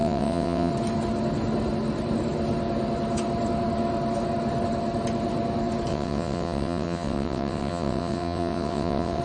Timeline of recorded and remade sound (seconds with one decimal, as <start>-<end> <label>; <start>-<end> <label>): 0.0-0.7 remade; 0.7-5.9 recorded; 5.9-9.2 remade